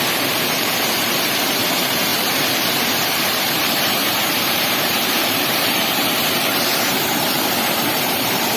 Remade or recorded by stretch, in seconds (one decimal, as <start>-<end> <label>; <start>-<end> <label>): 0.0-8.6 remade